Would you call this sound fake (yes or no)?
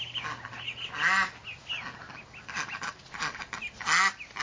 no